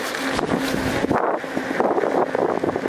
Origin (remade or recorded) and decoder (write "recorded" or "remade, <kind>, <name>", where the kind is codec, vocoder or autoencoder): recorded